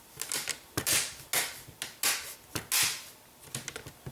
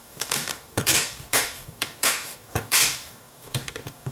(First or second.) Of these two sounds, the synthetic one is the second